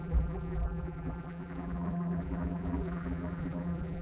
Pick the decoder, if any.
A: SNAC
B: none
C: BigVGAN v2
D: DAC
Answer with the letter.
C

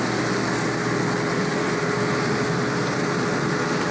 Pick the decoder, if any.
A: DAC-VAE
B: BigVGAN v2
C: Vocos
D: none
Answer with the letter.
D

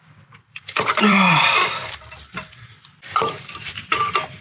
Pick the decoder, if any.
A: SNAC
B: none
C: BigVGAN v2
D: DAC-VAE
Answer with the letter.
C